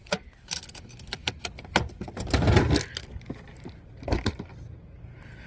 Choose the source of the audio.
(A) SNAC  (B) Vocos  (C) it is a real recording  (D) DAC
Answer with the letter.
C